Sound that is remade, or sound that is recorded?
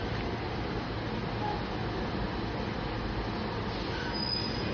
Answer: recorded